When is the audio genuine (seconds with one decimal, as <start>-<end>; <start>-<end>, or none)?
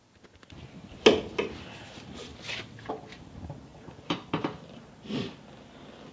0.0-3.7; 4.9-6.1